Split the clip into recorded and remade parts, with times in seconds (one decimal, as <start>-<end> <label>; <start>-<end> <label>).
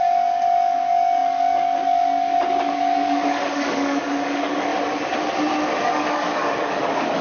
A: 0.0-4.7 remade; 4.7-5.8 recorded; 5.8-7.2 remade